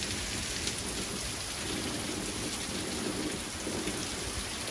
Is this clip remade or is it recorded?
recorded